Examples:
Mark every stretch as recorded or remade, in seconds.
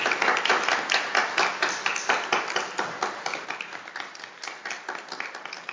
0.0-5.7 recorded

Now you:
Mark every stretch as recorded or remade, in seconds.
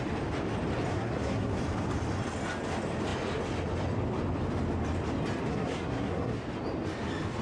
0.0-0.9 recorded; 0.9-1.6 remade; 1.6-5.5 recorded; 5.5-6.4 remade; 6.4-7.4 recorded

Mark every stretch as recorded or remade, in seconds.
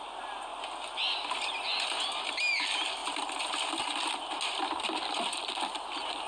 0.0-6.3 recorded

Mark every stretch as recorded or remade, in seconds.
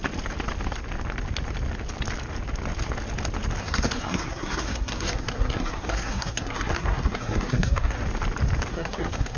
0.0-3.6 recorded; 3.6-8.0 remade; 8.0-8.7 recorded; 8.7-9.4 remade